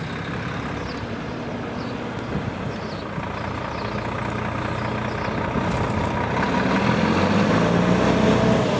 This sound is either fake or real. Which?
real